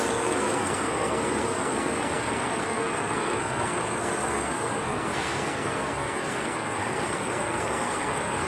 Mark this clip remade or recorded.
remade